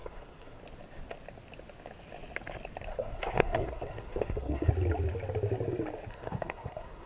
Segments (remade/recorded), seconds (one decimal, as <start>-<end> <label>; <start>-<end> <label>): 0.0-0.6 remade; 0.6-2.9 recorded; 2.9-4.7 remade; 4.7-6.1 recorded; 6.1-7.1 remade